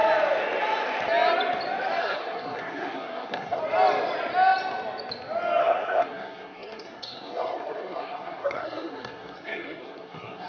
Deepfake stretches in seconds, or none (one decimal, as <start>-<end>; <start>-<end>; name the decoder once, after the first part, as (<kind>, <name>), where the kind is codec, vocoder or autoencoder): 2.0-3.6 (codec, SNAC); 5.6-10.5